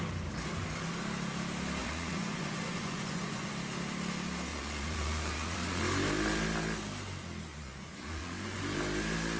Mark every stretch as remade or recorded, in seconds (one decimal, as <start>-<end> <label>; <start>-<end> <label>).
0.0-1.8 recorded; 1.8-3.5 remade; 3.5-4.5 recorded; 4.5-5.8 remade; 5.8-7.5 recorded; 7.5-8.6 remade; 8.6-9.4 recorded